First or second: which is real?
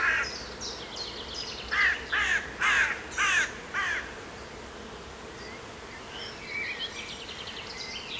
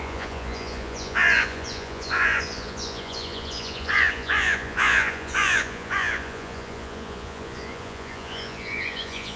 first